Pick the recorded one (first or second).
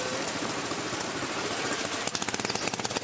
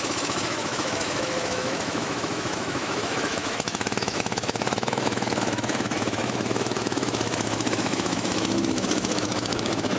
first